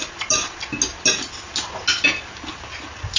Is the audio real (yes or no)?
yes